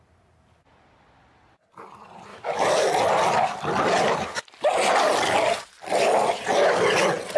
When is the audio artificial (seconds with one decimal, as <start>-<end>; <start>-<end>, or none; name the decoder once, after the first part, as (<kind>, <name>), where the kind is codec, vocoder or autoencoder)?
2.3-2.9 (autoencoder, DAC-VAE)